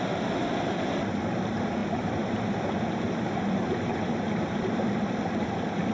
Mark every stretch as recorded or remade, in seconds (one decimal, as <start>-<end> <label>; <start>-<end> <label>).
0.0-5.9 recorded